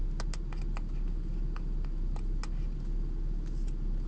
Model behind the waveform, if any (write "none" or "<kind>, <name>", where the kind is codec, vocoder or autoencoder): none